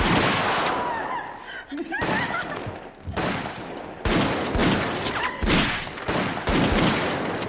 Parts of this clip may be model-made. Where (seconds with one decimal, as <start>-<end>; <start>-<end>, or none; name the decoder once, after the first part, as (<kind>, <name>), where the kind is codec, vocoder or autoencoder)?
none